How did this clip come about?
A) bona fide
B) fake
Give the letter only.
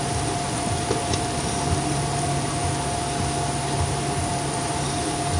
A